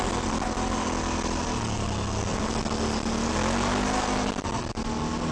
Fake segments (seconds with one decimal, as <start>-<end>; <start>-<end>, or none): none